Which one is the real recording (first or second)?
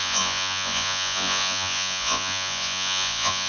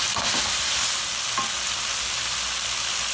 second